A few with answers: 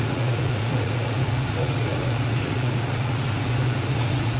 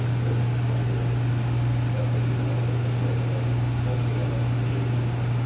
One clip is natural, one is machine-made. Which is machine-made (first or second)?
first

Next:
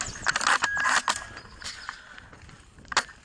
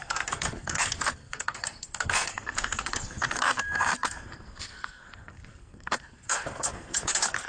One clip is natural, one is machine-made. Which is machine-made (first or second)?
second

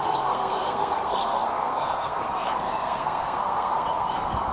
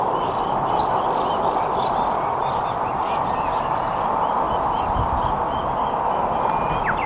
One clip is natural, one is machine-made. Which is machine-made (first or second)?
first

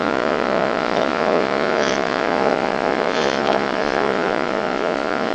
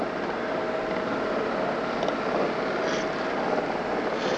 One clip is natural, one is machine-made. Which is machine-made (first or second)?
first